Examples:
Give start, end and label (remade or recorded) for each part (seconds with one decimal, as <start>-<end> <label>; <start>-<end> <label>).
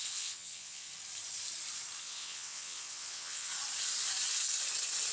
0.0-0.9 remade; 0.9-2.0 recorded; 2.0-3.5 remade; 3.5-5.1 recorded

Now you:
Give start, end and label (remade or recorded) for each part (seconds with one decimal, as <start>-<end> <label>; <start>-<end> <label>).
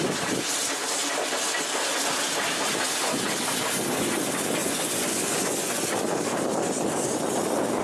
0.0-4.6 recorded; 4.6-5.8 remade; 5.8-7.8 recorded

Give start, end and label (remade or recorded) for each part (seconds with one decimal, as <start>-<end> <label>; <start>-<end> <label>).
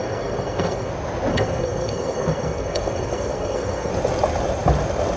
0.0-0.9 remade; 0.9-1.3 recorded; 1.3-3.9 remade; 3.9-5.2 recorded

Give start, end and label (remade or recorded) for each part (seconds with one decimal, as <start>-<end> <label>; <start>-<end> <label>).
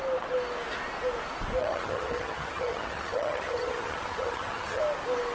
0.0-1.6 recorded; 1.6-4.8 remade; 4.8-5.3 recorded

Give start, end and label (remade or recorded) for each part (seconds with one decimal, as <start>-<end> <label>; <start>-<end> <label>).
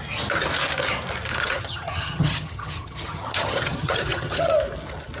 0.0-1.4 recorded; 1.4-4.5 remade; 4.5-5.2 recorded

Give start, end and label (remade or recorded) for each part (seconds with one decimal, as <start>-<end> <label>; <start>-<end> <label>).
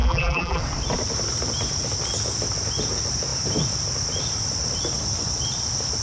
0.0-0.6 remade; 0.6-6.0 recorded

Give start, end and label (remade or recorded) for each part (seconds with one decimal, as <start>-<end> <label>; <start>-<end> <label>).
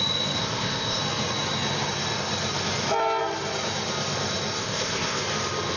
0.0-0.4 recorded; 0.4-1.0 remade; 1.0-4.6 recorded; 4.6-5.2 remade; 5.2-5.8 recorded